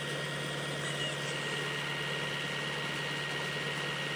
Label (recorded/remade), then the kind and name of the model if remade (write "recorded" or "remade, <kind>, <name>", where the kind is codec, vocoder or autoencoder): recorded